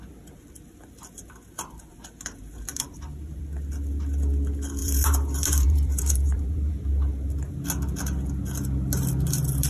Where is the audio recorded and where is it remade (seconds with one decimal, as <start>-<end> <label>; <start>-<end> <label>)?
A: 0.0-2.7 recorded; 2.7-3.4 remade; 3.4-4.8 recorded; 4.8-6.7 remade; 6.7-9.7 recorded